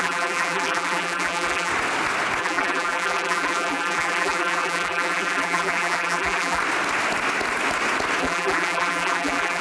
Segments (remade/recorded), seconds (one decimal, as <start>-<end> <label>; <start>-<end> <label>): 0.0-1.7 remade; 1.7-2.4 recorded; 2.4-6.6 remade; 6.6-8.2 recorded; 8.2-9.6 remade